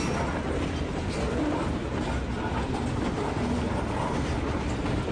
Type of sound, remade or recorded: recorded